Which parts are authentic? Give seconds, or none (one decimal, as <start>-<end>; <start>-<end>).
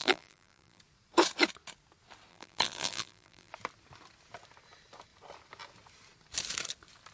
0.8-2.3; 3.5-7.1